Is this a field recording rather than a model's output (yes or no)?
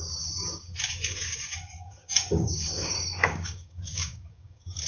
no